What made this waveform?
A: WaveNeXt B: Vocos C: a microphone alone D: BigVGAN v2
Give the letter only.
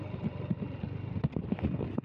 C